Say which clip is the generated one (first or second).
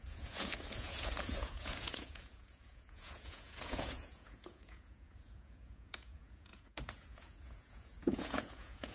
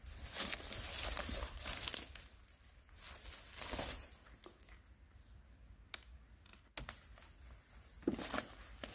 first